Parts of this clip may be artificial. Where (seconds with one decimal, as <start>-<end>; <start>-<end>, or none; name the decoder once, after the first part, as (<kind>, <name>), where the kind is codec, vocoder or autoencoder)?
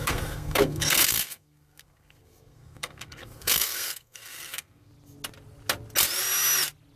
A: 0.0-4.9 (codec, SNAC)